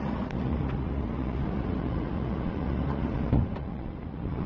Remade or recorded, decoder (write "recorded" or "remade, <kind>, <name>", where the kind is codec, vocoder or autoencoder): remade, vocoder, Vocos